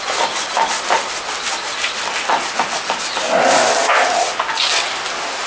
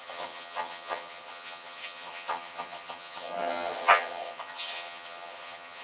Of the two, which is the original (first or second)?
first